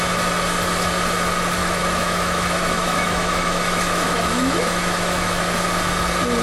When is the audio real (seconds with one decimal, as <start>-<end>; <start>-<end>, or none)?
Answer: 0.0-1.6; 5.4-6.4